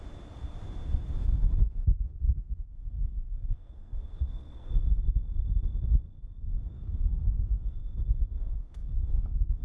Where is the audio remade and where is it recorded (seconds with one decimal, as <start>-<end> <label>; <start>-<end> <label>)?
0.0-1.7 recorded; 1.7-4.8 remade; 4.8-6.2 recorded; 6.2-9.6 remade